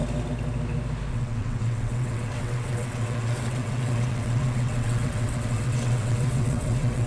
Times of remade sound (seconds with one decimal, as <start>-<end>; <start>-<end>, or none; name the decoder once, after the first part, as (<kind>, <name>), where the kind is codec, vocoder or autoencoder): 1.1-7.1 (vocoder, WaveNeXt)